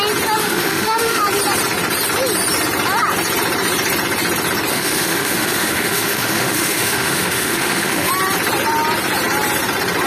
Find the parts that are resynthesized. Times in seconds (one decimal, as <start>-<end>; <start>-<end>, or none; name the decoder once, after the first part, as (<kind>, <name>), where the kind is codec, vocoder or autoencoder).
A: 0.4-1.2 (autoencoder, DAC-VAE); 4.7-8.1